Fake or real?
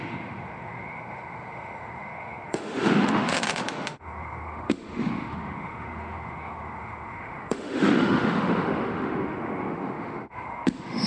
fake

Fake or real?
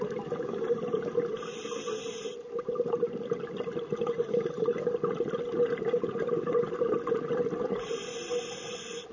real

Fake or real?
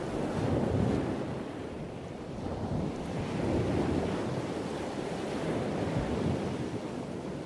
real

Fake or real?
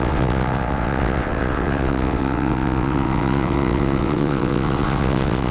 fake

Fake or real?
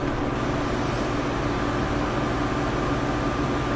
real